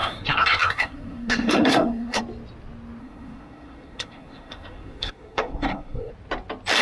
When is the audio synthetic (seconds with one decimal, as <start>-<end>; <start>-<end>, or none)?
0.0-2.2; 3.0-6.1